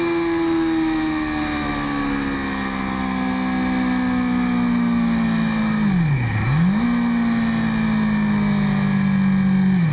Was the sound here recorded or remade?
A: recorded